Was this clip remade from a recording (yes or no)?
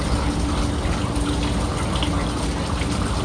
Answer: no